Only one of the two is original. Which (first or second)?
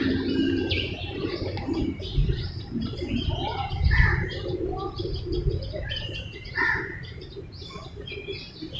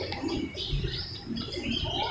second